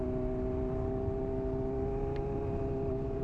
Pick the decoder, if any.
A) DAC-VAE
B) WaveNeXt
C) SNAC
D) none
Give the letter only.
D